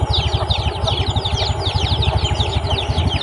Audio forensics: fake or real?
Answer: real